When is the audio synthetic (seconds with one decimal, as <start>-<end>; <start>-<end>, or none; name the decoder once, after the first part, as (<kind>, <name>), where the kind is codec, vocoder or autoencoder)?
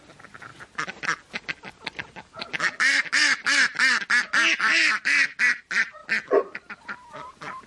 0.0-0.5 (vocoder, BigVGAN v2); 4.2-4.7; 5.4-6.0; 6.6-7.7